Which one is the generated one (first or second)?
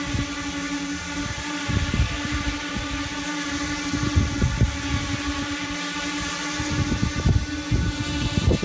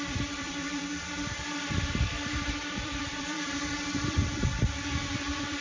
second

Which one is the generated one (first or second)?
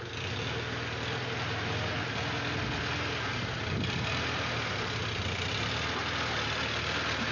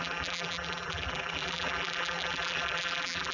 second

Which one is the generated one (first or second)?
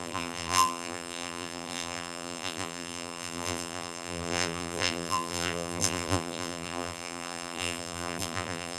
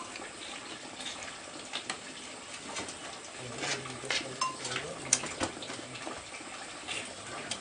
first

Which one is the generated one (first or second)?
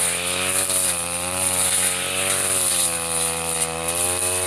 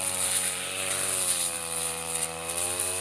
second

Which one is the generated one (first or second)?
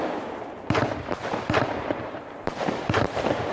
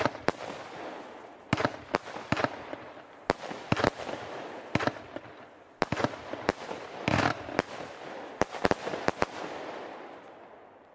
first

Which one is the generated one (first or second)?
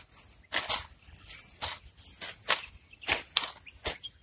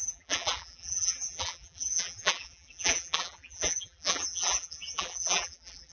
second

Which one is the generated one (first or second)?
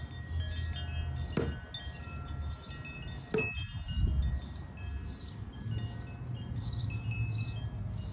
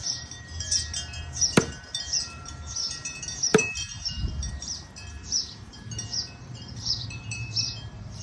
second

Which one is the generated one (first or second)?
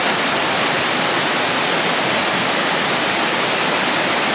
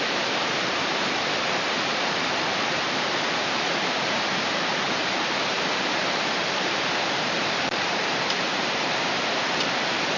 second